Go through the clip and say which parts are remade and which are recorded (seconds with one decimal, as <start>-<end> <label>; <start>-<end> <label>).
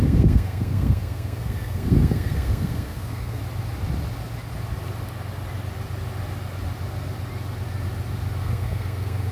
0.0-3.4 remade; 3.4-8.4 recorded; 8.4-9.3 remade